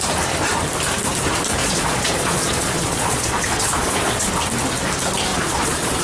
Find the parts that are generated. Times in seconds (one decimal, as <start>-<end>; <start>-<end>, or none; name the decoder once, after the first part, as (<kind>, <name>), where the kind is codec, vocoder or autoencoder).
1.6-4.3 (vocoder, Vocos); 5.3-6.0

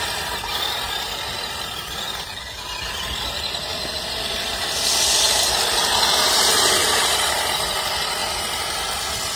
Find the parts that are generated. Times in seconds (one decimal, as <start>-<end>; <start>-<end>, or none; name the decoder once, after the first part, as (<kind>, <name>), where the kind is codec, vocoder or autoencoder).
3.7-5.4 (vocoder, BigVGAN v2); 8.2-8.9